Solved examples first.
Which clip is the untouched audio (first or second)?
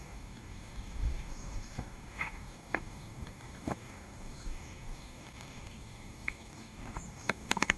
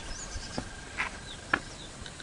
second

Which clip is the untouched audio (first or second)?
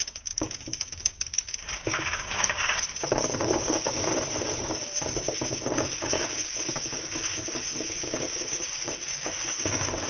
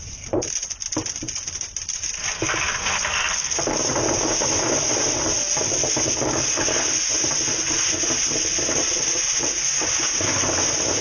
second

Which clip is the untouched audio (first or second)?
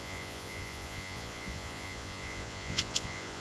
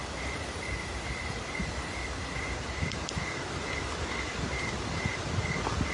second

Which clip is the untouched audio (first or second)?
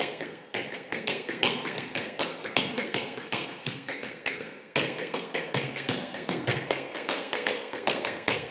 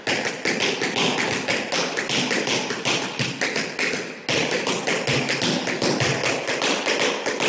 second